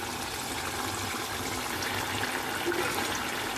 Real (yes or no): yes